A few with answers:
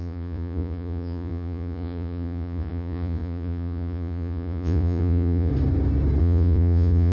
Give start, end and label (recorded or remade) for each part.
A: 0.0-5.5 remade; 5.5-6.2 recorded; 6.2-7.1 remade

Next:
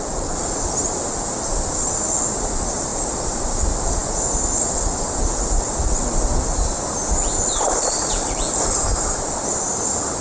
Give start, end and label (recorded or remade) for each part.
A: 0.0-10.2 recorded